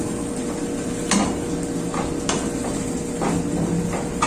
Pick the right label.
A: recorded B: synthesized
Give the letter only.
A